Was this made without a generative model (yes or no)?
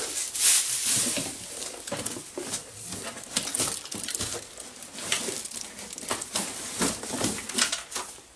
yes